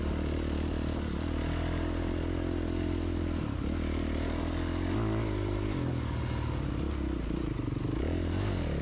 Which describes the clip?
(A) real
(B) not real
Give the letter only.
A